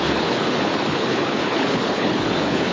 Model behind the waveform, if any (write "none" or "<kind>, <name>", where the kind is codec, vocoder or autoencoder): codec, HILCodec